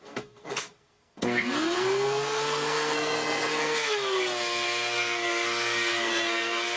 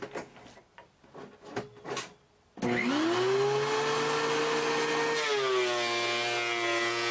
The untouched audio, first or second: second